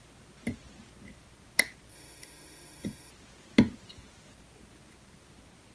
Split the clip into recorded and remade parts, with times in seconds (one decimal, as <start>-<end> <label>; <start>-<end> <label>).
0.0-1.9 recorded; 1.9-3.1 remade; 3.1-5.7 recorded